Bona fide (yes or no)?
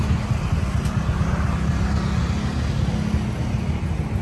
yes